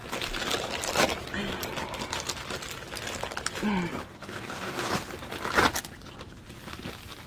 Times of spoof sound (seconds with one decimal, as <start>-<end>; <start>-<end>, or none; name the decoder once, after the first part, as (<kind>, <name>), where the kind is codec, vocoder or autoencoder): 4.1-4.9 (codec, DAC)